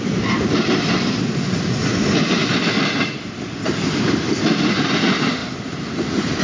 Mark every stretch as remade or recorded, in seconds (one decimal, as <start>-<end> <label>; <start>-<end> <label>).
0.0-5.4 recorded; 5.4-6.4 remade